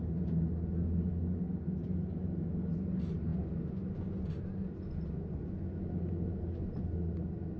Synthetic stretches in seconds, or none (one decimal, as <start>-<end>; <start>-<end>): none